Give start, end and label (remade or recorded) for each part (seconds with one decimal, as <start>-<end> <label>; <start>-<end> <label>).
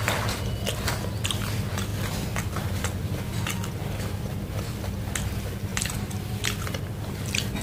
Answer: 0.0-7.6 recorded